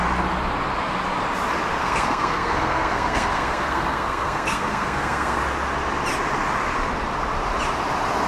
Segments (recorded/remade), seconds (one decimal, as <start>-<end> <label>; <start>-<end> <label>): 0.0-1.8 recorded; 1.8-5.4 remade; 5.4-8.3 recorded